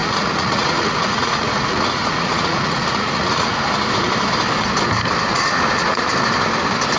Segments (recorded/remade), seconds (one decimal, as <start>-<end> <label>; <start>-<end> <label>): 0.0-3.5 remade; 3.5-5.3 recorded; 5.3-6.1 remade; 6.1-7.0 recorded